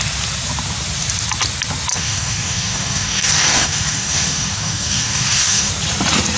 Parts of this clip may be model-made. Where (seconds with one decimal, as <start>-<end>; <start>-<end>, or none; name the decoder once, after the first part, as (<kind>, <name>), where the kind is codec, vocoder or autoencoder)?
1.9-5.7 (codec, DAC)